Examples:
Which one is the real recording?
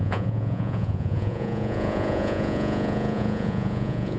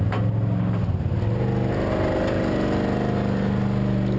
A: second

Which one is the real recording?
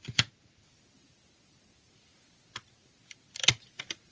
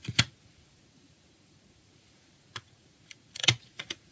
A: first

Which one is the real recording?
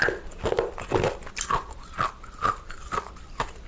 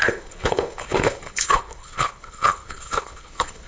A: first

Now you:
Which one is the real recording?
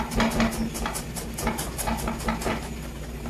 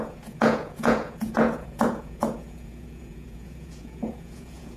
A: first